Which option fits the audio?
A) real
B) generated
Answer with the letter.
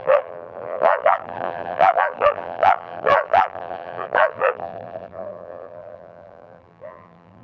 B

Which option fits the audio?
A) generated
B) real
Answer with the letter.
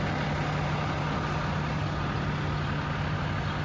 B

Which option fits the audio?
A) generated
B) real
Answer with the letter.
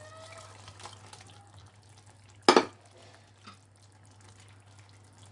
B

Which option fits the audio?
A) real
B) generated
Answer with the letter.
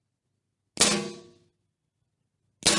A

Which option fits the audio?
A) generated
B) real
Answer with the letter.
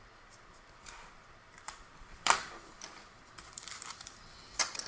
A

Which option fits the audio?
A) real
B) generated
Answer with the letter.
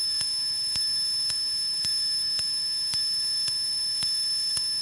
B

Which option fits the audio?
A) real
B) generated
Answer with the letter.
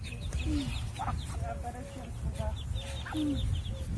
A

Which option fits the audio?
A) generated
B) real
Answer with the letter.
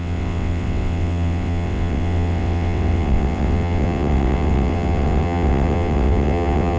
A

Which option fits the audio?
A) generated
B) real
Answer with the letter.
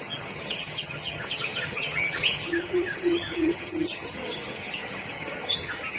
A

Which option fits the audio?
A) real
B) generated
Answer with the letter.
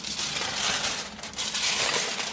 A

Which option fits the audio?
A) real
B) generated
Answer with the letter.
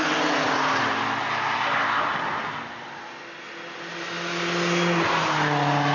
A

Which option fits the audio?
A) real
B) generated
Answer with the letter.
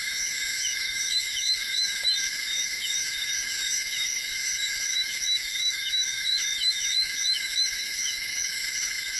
B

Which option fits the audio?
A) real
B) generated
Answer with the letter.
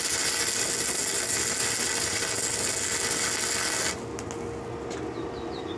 A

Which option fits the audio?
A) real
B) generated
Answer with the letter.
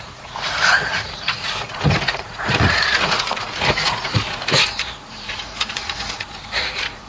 B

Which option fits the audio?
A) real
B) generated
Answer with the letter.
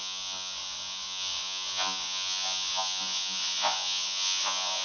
B